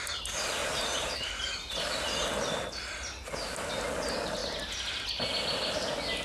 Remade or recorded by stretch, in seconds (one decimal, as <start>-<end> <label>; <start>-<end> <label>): 0.0-0.6 recorded; 0.6-1.3 remade; 1.3-6.2 recorded